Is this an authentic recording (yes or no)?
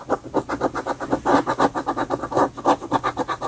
yes